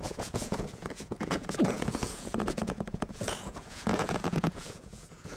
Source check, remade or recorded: remade